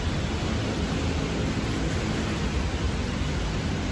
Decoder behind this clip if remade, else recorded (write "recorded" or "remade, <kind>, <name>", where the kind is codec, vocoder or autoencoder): recorded